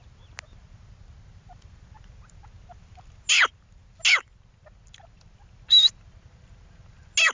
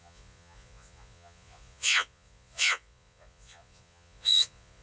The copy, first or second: second